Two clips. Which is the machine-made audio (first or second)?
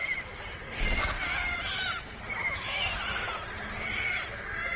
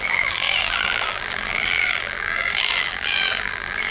second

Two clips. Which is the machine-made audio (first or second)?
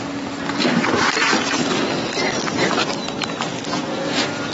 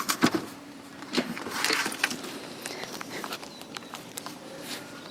second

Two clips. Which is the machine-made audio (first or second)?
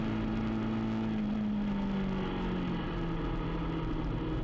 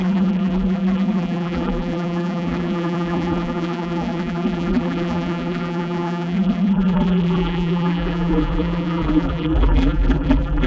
second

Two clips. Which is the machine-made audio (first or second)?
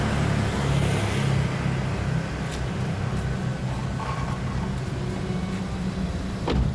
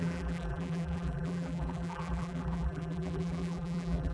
second